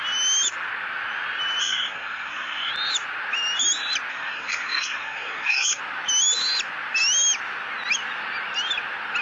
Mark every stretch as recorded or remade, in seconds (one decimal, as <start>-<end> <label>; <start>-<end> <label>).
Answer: 0.0-1.6 recorded; 1.6-2.7 remade; 2.7-4.1 recorded; 4.1-5.8 remade; 5.8-9.2 recorded